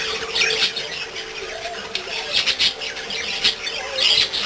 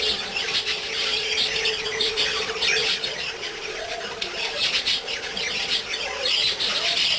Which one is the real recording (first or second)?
first